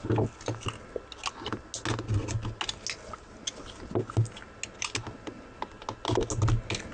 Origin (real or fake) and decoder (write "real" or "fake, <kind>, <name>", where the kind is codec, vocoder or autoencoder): real